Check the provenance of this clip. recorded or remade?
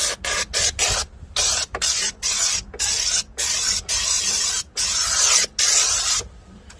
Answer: recorded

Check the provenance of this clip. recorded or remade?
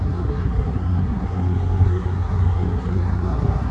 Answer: remade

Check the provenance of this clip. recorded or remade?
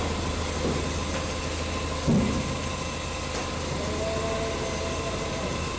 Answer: recorded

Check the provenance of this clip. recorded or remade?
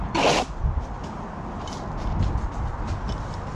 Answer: recorded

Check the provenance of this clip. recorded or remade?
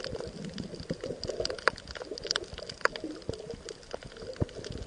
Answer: recorded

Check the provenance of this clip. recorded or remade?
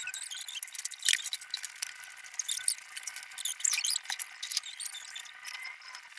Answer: recorded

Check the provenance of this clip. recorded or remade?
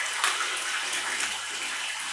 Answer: recorded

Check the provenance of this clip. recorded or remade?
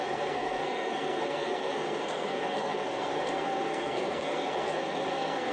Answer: remade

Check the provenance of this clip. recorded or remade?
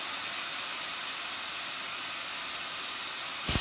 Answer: recorded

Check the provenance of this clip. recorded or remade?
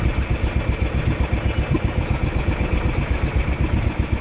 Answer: recorded